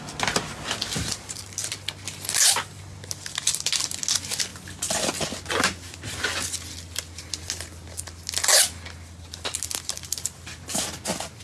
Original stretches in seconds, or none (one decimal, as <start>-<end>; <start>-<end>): 0.0-11.4